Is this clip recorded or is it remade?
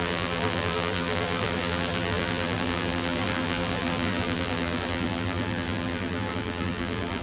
remade